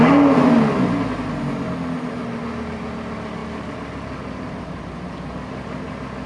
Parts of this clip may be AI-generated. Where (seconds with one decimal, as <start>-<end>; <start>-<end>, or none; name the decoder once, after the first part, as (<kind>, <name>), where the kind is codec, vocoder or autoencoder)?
none

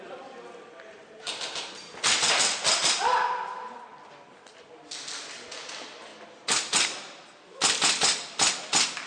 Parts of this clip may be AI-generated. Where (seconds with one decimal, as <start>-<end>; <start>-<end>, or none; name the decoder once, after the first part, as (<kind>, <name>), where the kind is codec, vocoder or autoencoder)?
none

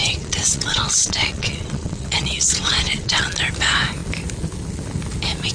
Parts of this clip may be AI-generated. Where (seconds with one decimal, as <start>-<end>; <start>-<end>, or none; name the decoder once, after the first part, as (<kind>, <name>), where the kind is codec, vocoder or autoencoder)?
0.0-3.3 (vocoder, WaveNeXt)

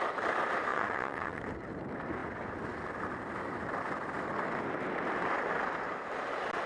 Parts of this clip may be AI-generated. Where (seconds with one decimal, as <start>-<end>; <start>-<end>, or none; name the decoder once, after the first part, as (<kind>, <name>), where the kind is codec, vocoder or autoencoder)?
0.7-1.4 (vocoder, WaveNeXt)

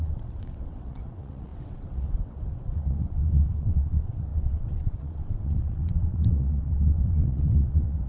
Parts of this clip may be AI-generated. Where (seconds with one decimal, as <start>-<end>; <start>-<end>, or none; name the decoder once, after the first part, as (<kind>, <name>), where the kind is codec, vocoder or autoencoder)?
0.0-8.1 (vocoder, WaveNeXt)

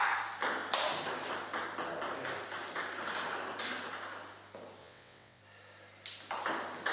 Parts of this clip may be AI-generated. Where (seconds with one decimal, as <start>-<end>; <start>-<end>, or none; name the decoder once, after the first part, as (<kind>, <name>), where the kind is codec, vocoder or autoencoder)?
4.8-5.4 (vocoder, WaveNeXt)